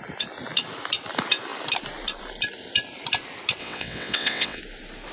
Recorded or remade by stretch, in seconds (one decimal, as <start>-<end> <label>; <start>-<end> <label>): 0.0-3.6 recorded; 3.6-4.6 remade; 4.6-5.1 recorded